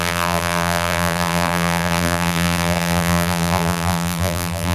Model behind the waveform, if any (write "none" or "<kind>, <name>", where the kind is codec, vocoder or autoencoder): vocoder, BigVGAN v2